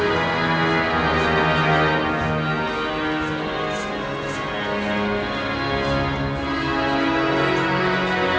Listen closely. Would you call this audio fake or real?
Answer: real